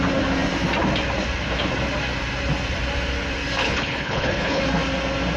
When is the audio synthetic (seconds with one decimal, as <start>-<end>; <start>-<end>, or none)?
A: 3.6-4.6